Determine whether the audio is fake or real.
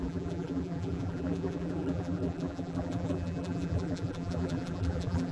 fake